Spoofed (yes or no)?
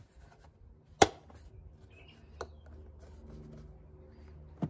no